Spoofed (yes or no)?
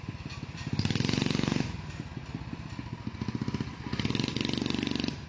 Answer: no